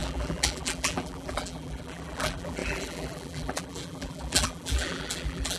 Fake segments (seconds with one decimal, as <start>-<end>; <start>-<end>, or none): 0.0-5.6